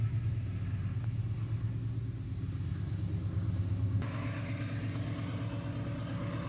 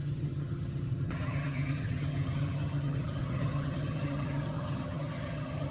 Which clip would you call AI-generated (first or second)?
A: second